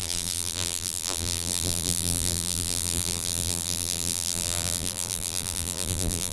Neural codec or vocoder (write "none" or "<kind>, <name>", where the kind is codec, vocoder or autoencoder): vocoder, BigVGAN v2